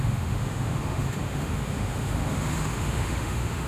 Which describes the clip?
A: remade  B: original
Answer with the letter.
A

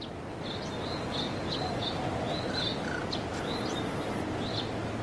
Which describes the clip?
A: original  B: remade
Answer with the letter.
A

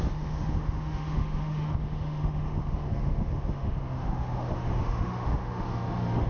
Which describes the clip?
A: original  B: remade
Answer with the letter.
B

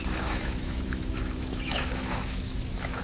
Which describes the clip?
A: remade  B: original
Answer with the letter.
A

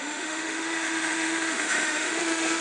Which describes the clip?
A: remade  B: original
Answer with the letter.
A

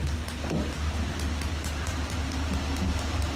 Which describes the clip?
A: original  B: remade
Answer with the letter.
A